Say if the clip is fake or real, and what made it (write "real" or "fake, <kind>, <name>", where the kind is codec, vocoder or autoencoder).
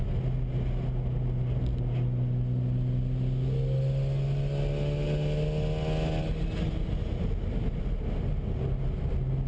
real